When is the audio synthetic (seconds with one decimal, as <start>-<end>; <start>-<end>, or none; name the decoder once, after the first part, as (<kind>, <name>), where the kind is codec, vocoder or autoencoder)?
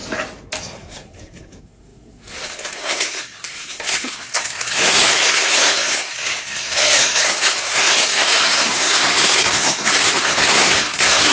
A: 0.6-11.3 (codec, SNAC)